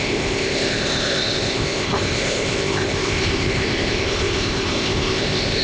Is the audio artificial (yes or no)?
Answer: yes